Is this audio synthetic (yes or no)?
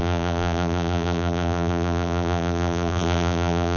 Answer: yes